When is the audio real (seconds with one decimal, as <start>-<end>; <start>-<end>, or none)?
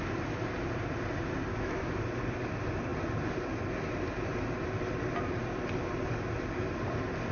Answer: 0.0-1.5; 2.0-7.3